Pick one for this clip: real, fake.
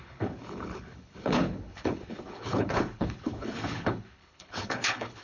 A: fake